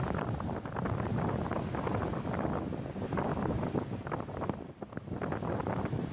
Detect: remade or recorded recorded